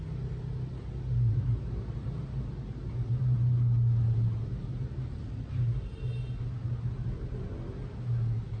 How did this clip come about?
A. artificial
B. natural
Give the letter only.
B